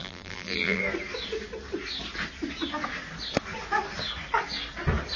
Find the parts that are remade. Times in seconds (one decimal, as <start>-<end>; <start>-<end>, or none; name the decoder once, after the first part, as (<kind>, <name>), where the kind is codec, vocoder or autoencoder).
0.0-0.8 (vocoder, BigVGAN v2)